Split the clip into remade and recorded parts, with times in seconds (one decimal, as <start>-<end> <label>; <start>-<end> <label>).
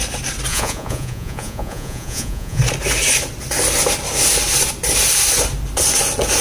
0.0-0.5 recorded; 0.5-2.6 remade; 2.6-6.4 recorded